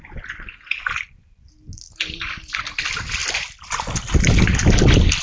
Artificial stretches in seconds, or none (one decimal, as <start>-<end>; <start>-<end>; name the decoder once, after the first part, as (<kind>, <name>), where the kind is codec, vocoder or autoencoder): none